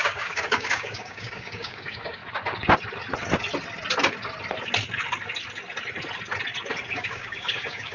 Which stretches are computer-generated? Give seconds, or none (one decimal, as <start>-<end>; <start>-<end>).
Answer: 0.0-2.2; 6.9-7.9